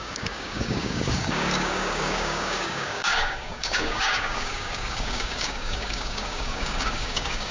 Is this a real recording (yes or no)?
no